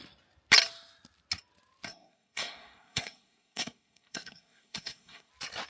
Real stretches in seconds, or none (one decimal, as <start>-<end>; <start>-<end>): 0.0-1.9; 5.3-5.7